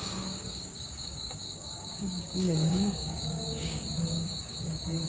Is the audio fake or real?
fake